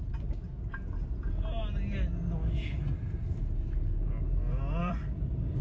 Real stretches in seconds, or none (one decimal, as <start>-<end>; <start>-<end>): 0.0-4.8